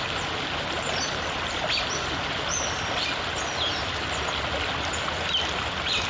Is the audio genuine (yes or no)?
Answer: yes